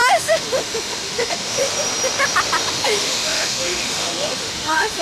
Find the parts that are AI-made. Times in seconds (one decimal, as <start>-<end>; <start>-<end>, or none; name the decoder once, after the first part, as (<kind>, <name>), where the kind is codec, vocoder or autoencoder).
0.0-1.6 (autoencoder, DAC-VAE); 2.7-5.0